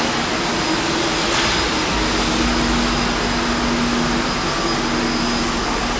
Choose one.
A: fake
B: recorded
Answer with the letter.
B